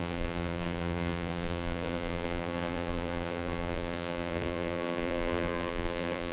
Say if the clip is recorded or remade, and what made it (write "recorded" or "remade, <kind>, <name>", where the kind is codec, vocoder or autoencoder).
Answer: remade, vocoder, BigVGAN v2